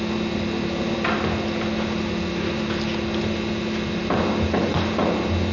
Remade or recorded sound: recorded